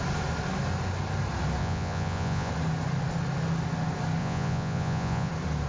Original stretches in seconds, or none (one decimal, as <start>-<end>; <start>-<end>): 0.0-1.6; 2.5-4.2; 5.3-5.7